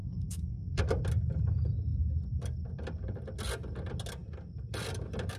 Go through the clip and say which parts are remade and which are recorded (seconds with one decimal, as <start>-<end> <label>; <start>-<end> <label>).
0.0-0.8 remade; 0.8-5.4 recorded

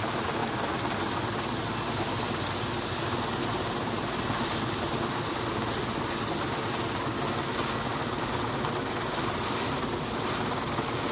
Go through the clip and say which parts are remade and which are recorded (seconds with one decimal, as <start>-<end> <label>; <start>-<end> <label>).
0.0-11.1 recorded

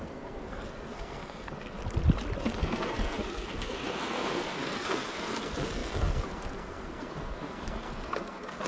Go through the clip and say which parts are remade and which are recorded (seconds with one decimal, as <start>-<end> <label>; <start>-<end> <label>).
0.0-1.8 remade; 1.8-2.4 recorded; 2.4-8.7 remade

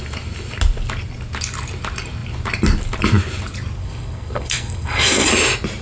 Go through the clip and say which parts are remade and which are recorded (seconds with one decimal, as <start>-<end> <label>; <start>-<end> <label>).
0.0-3.8 recorded; 3.8-5.3 remade; 5.3-5.8 recorded

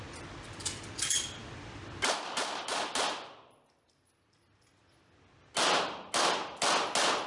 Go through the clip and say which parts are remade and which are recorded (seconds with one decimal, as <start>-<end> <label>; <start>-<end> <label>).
0.0-7.3 recorded

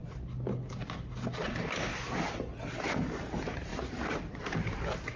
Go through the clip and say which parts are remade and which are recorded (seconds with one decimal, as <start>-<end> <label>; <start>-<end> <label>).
0.0-5.2 recorded